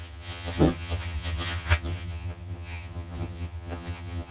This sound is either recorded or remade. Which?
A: remade